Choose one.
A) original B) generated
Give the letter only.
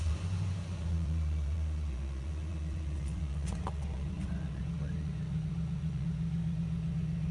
B